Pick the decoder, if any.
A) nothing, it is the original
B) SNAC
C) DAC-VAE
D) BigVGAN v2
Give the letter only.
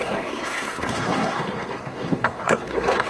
B